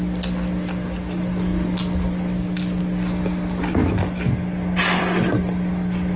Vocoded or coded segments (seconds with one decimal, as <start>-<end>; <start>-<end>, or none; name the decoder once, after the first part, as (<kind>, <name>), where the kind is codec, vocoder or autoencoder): none